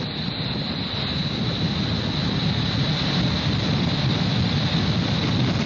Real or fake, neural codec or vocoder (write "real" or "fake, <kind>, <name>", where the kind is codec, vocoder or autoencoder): real